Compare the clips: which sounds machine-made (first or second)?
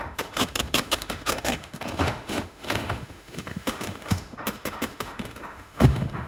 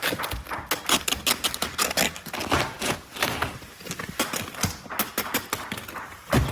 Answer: first